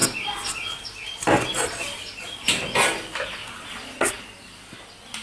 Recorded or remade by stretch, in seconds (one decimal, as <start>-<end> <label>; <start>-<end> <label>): 0.0-5.2 recorded